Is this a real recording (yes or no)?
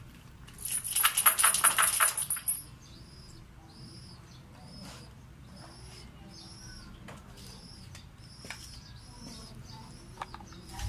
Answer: yes